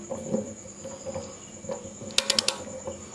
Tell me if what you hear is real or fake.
real